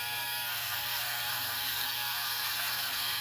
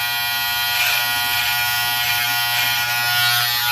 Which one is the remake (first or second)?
first